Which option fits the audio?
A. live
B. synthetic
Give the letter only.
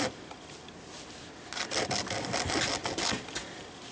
A